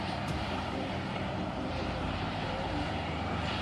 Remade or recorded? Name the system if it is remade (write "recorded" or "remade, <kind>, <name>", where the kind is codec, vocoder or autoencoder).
remade, vocoder, BigVGAN v2